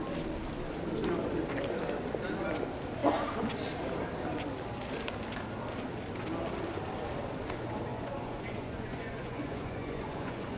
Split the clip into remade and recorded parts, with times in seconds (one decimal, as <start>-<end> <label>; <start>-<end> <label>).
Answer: 0.0-7.9 recorded; 7.9-10.6 remade